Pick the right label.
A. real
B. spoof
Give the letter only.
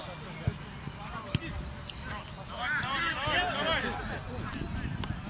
A